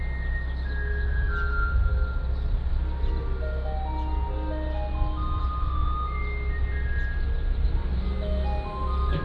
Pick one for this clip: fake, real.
real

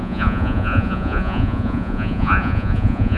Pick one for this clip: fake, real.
fake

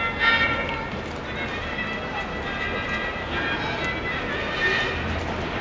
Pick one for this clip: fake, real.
real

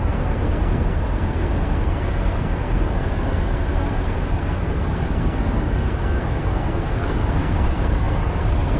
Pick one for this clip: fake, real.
fake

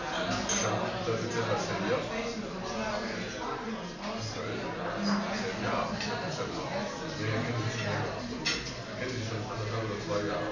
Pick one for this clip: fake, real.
real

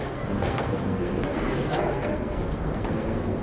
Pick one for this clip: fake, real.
fake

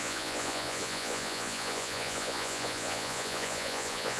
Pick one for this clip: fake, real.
fake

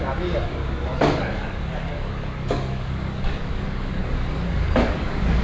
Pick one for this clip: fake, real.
fake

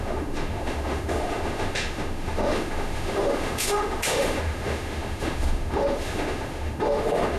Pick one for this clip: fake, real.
fake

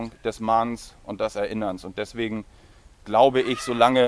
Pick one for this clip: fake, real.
fake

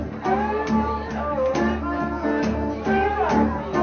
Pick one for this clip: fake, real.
real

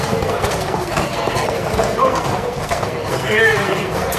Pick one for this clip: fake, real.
fake